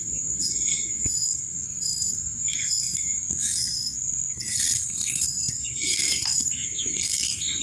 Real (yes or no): no